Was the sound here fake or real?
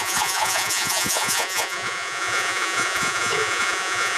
fake